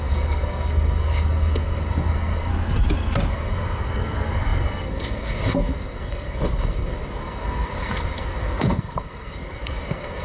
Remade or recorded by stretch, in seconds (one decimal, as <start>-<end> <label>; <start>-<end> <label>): 0.0-2.5 remade; 2.5-3.3 recorded; 3.3-10.2 remade

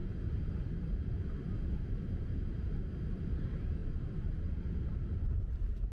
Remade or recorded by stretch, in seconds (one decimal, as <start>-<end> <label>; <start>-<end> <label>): 0.0-2.3 remade; 2.3-3.1 recorded; 3.1-5.9 remade

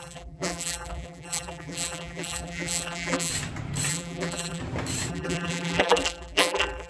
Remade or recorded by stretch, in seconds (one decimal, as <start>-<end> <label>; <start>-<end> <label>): 0.0-3.3 remade; 3.3-3.9 recorded; 3.9-4.6 remade; 4.6-5.1 recorded; 5.1-6.9 remade

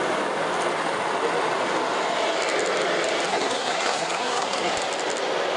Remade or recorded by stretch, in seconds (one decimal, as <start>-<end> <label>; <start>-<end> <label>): 0.0-3.3 recorded; 3.3-4.7 remade; 4.7-5.6 recorded

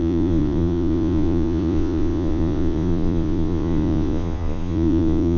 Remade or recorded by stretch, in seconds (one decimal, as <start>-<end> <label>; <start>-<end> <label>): 0.0-5.4 remade